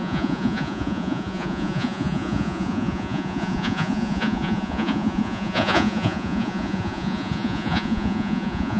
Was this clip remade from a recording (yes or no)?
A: yes